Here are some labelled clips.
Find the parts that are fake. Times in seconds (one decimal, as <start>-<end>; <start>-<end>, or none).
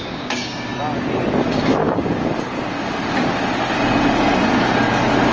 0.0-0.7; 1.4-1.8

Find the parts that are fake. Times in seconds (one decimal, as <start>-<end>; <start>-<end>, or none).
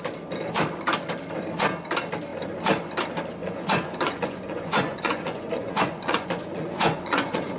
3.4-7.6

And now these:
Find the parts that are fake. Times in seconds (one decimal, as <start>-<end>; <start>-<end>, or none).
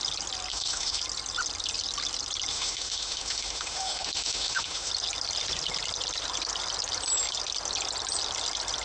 0.5-1.0; 2.5-4.9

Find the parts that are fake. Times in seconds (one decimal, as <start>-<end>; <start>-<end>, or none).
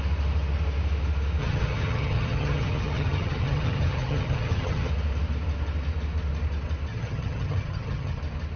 1.4-4.9; 6.9-8.2